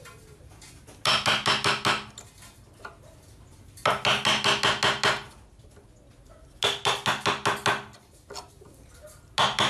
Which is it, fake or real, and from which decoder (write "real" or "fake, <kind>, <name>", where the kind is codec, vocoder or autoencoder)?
real